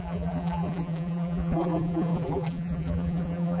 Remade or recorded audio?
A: remade